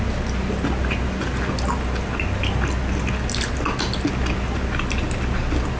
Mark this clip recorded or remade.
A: recorded